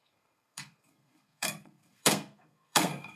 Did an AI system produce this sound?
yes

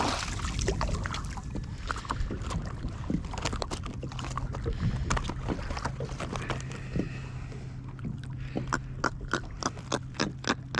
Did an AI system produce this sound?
no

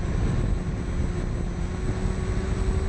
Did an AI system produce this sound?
no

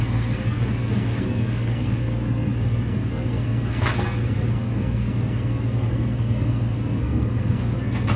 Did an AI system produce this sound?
yes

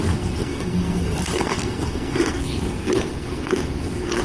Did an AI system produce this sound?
yes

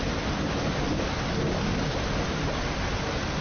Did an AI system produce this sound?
no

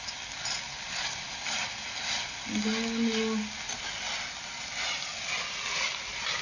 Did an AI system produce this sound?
no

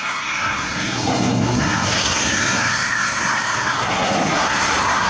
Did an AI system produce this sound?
yes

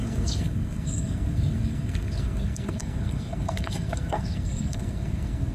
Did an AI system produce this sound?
yes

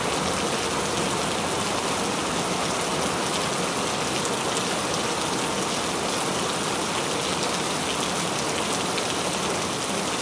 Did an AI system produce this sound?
no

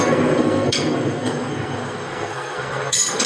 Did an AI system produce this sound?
yes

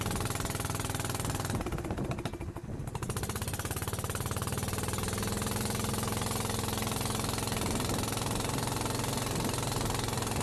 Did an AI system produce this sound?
no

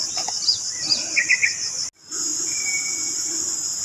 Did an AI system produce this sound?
no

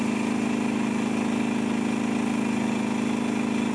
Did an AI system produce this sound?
no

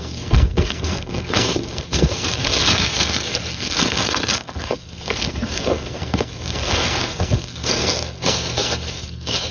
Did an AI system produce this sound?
yes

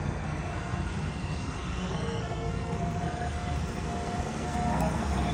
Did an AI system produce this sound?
yes